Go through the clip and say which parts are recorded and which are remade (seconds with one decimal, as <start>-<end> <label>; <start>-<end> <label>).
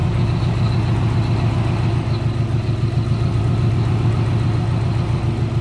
0.0-5.6 recorded